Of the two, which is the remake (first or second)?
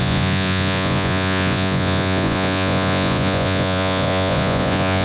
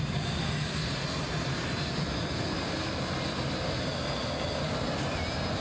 first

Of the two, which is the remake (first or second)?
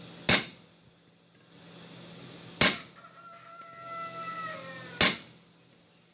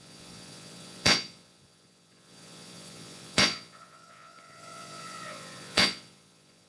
second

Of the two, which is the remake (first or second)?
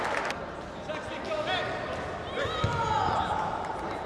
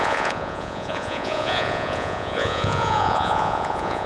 second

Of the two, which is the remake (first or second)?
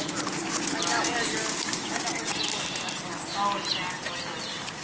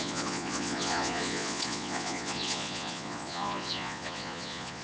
second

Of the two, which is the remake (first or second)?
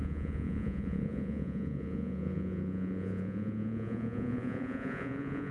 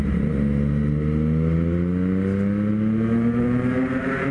first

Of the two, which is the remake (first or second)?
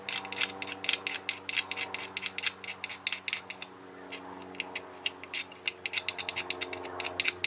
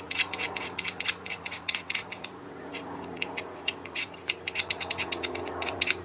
second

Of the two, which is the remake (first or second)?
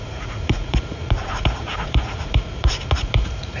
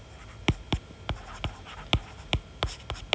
first